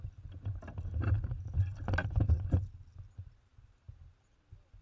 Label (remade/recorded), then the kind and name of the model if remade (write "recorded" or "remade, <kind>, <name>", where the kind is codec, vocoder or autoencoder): recorded